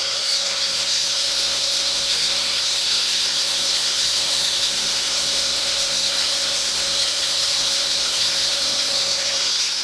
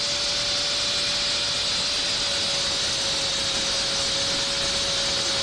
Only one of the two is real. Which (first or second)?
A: second